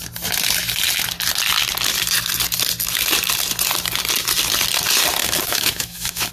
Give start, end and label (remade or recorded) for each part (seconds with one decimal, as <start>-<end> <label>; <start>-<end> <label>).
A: 0.0-5.2 recorded; 5.2-6.3 remade